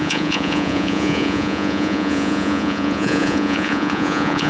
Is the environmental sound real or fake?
fake